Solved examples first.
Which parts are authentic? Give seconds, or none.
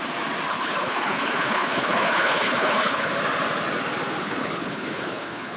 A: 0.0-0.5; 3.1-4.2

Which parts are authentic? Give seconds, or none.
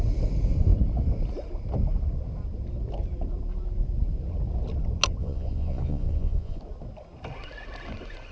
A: 0.0-5.2; 6.6-8.3